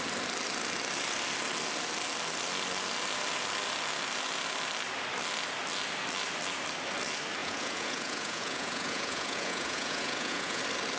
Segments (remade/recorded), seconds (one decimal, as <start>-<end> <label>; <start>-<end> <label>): 0.0-7.4 recorded; 7.4-10.6 remade; 10.6-11.0 recorded